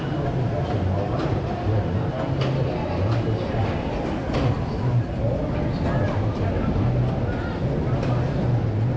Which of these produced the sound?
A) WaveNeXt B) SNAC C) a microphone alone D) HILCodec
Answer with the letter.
C